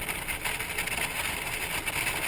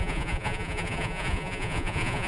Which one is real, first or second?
first